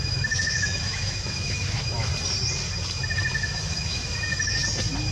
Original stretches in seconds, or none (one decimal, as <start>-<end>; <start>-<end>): 2.1-3.3; 4.3-5.1